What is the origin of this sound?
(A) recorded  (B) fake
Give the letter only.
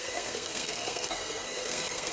B